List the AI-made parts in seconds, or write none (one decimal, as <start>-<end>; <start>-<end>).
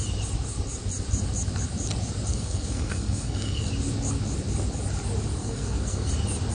2.3-3.7; 5.4-6.1